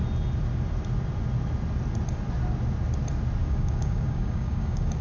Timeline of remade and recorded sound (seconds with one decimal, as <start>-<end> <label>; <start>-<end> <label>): 0.0-3.4 recorded; 3.4-5.0 remade